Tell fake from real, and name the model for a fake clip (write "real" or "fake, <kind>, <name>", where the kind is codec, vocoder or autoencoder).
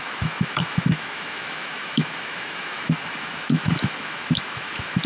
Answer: fake, autoencoder, DAC-VAE